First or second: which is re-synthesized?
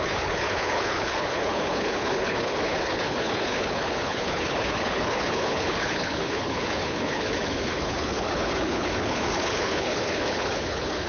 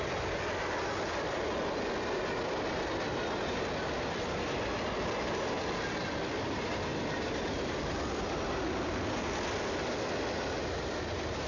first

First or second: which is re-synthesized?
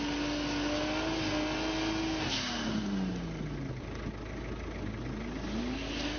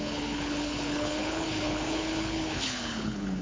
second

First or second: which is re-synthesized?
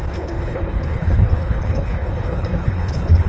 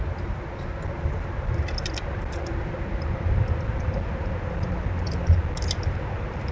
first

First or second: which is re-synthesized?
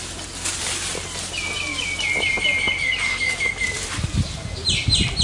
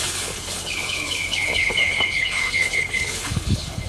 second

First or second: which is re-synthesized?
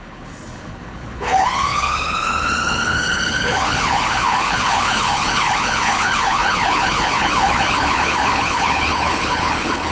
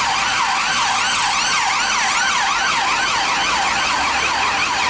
first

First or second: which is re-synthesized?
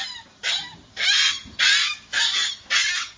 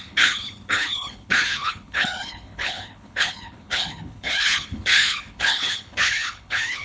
second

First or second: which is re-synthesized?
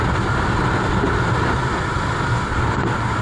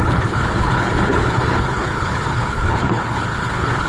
second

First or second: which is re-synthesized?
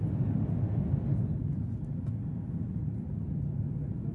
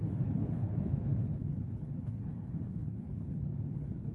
second